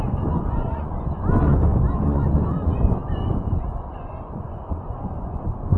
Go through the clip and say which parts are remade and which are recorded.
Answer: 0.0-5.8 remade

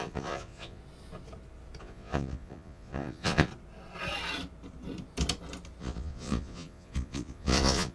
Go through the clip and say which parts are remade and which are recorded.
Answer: 0.0-0.8 remade; 0.8-1.8 recorded; 1.8-3.5 remade; 3.5-5.8 recorded; 5.8-7.9 remade

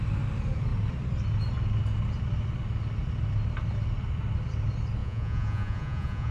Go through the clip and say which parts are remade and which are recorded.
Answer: 0.0-5.0 recorded; 5.0-6.3 remade

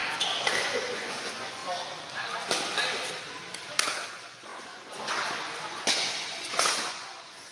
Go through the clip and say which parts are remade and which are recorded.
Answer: 0.0-0.6 recorded; 0.6-1.6 remade; 1.6-4.1 recorded; 4.1-7.5 remade

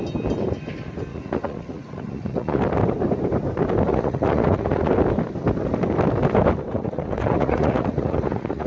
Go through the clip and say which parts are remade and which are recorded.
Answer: 0.0-1.1 recorded; 1.1-2.6 remade; 2.6-3.9 recorded; 3.9-4.9 remade; 4.9-6.7 recorded; 6.7-8.7 remade